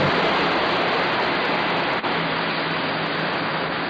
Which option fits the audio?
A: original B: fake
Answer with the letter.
A